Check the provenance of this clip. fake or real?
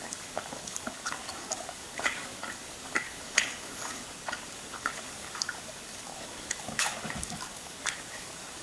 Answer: fake